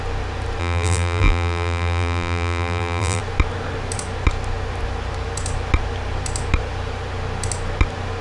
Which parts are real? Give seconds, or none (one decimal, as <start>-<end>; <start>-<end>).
0.0-0.6; 3.2-8.2